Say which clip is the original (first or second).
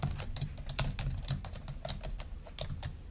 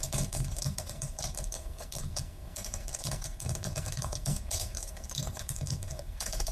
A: first